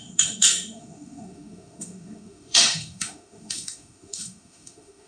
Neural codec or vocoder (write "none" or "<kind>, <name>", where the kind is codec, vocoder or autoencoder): autoencoder, DAC-VAE